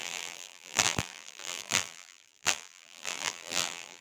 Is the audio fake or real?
fake